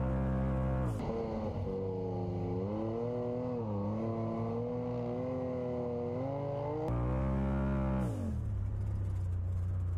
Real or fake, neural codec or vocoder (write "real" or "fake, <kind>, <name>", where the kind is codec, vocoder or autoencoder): real